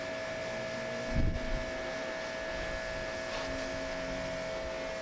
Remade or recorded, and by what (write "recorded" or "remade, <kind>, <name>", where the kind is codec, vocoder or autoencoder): recorded